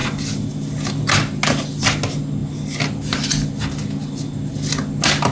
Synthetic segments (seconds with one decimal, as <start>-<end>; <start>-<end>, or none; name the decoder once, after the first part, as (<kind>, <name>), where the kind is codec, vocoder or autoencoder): none